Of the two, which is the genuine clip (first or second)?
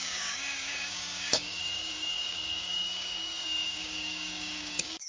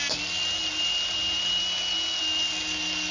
second